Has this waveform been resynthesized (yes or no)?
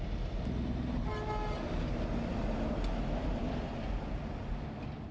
no